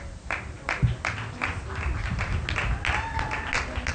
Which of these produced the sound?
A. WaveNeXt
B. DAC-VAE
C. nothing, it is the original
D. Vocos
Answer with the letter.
C